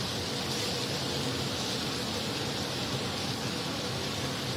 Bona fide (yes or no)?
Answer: yes